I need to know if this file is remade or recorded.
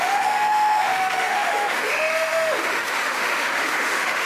remade